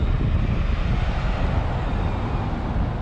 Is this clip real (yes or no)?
yes